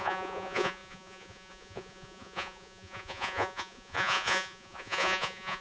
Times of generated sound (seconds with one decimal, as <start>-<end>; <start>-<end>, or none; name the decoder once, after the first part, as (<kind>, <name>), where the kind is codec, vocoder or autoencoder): 0.0-5.6 (vocoder, Vocos)